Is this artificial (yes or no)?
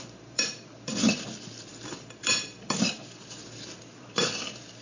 yes